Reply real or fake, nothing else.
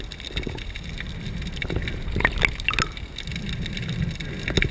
real